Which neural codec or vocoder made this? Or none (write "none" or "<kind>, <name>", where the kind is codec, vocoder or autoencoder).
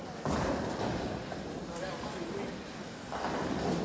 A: none